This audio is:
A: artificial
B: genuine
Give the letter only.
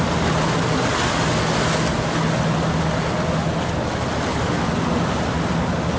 B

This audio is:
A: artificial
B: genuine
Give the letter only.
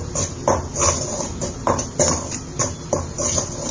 B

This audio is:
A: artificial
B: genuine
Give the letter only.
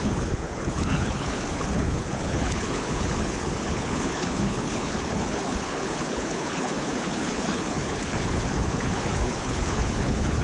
A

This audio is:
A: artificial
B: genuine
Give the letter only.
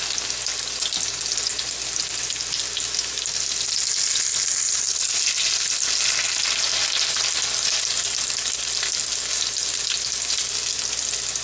B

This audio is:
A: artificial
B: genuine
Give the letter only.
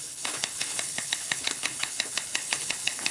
A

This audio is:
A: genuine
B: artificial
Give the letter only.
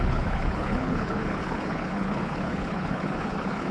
B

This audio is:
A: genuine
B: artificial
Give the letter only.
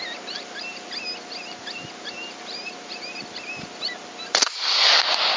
A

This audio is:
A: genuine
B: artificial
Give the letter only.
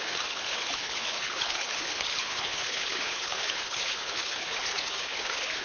B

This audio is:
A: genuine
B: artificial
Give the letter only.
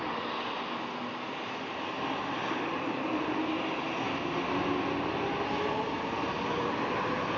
A